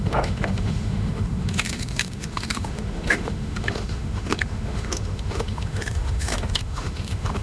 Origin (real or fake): fake